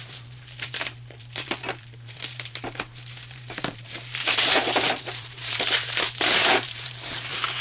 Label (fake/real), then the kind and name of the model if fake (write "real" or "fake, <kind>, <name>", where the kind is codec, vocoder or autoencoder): fake, vocoder, BigVGAN v2